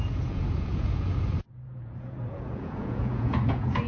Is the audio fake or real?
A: fake